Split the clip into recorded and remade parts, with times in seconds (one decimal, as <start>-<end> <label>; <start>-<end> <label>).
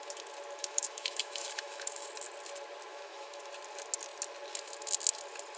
0.0-0.6 recorded; 0.6-2.1 remade; 2.1-2.9 recorded; 2.9-3.5 remade; 3.5-5.6 recorded